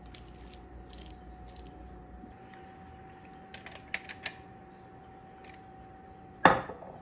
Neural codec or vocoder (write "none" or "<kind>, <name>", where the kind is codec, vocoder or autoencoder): none